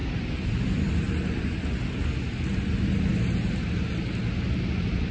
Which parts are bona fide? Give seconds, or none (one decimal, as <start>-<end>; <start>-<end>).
0.0-5.1